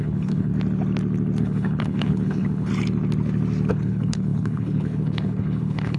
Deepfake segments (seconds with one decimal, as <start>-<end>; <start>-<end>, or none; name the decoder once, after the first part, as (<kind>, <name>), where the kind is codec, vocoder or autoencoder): 0.0-0.5 (codec, HILCodec); 1.4-2.7; 3.7-6.0